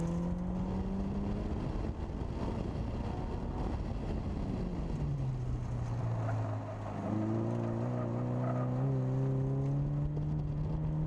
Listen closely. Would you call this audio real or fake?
real